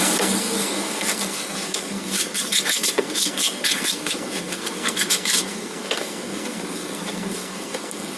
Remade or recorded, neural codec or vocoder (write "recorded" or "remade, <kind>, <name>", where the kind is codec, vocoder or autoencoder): remade, codec, SNAC